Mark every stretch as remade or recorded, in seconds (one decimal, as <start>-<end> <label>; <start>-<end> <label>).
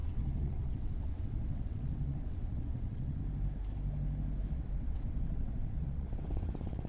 0.0-3.2 remade; 3.2-4.5 recorded; 4.5-6.9 remade